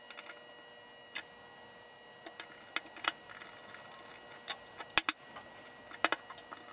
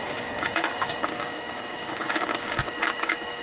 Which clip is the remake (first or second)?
second